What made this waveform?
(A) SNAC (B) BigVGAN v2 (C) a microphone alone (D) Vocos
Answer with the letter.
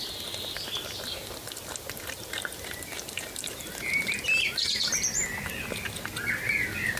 C